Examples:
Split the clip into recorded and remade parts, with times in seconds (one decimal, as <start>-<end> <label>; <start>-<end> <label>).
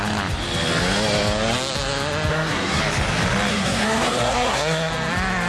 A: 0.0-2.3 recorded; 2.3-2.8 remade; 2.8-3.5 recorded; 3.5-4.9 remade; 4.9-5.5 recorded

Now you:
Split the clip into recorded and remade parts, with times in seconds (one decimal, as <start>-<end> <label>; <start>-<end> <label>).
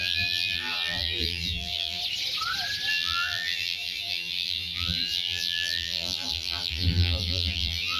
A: 0.0-2.0 remade; 2.0-2.9 recorded; 2.9-8.0 remade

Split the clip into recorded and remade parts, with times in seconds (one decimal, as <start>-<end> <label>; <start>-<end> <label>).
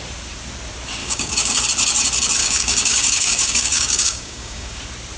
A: 0.0-1.0 recorded; 1.0-1.6 remade; 1.6-2.4 recorded; 2.4-4.8 remade; 4.8-5.2 recorded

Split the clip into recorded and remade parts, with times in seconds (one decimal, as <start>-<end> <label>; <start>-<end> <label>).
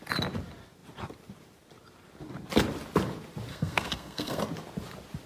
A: 0.0-3.5 recorded; 3.5-4.4 remade; 4.4-5.3 recorded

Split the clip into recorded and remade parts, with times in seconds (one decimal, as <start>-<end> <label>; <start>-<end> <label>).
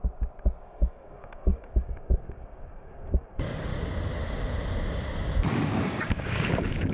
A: 0.0-0.6 recorded; 0.6-3.7 remade; 3.7-5.7 recorded; 5.7-6.9 remade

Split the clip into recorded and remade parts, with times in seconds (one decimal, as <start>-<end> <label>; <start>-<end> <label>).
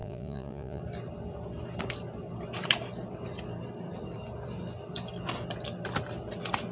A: 0.0-0.8 remade; 0.8-6.7 recorded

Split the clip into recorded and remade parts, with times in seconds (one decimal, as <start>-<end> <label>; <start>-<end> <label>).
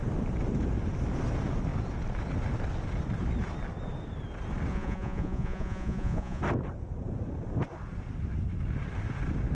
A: 0.0-4.7 recorded; 4.7-6.4 remade; 6.4-9.5 recorded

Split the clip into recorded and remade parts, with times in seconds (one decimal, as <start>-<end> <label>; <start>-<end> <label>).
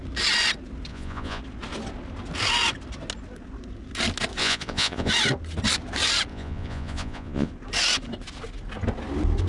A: 0.0-0.9 recorded; 0.9-1.4 remade; 1.4-4.4 recorded; 4.4-5.1 remade; 5.1-6.3 recorded; 6.3-7.5 remade; 7.5-9.5 recorded